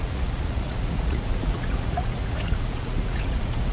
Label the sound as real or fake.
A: fake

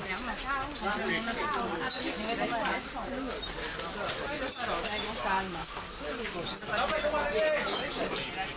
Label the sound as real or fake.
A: real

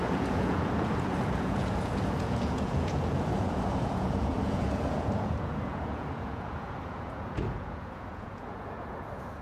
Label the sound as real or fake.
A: fake